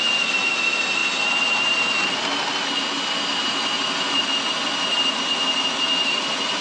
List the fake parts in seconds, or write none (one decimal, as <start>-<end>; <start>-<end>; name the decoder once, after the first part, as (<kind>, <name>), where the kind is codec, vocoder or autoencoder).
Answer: none